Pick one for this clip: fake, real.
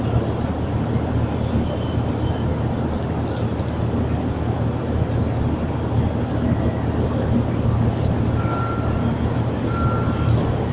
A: real